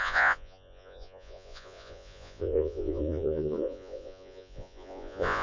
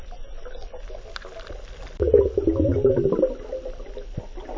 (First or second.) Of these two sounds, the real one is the second